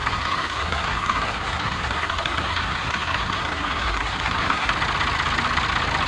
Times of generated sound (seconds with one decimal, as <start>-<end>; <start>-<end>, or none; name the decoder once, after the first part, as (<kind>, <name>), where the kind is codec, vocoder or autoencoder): 0.0-4.7 (codec, SNAC)